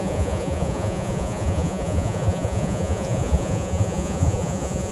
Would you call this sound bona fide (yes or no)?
no